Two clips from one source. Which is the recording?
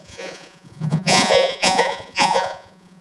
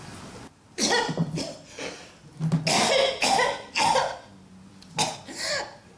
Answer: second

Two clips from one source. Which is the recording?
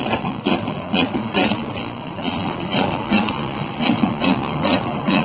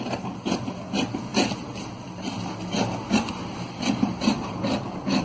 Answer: second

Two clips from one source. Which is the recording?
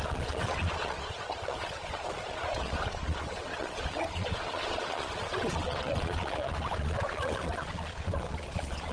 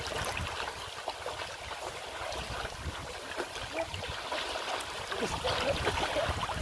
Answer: second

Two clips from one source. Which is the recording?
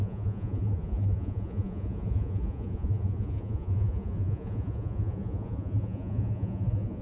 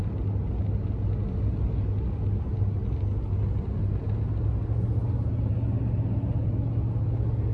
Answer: second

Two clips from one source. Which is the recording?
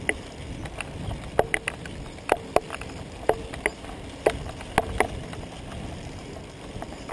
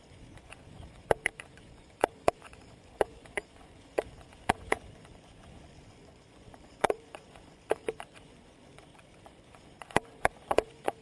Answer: first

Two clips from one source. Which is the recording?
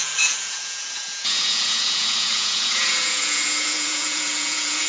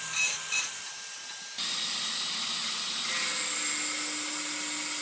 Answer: second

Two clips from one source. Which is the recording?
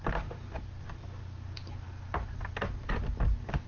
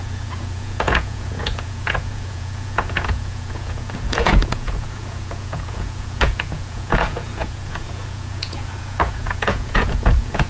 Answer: first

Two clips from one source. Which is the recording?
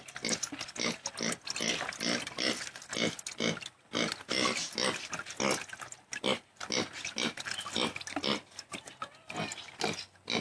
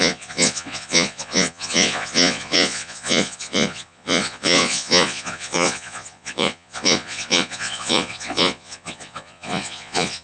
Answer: first